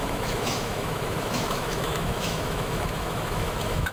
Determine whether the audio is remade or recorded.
remade